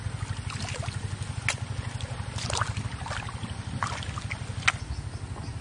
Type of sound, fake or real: real